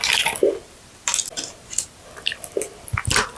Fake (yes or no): no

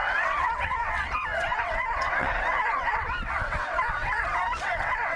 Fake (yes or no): yes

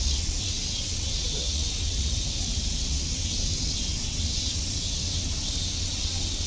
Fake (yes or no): yes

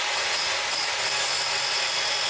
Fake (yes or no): no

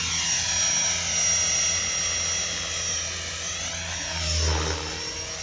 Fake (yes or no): no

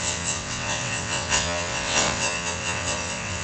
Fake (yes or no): yes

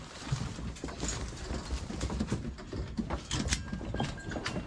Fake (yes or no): no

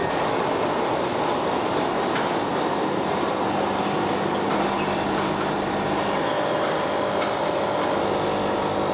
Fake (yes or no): no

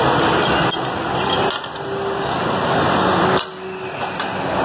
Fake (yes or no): no